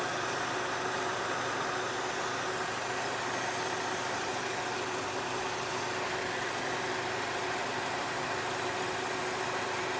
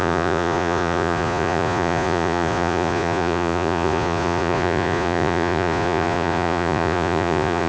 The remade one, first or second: second